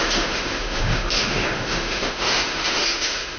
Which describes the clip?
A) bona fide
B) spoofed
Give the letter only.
B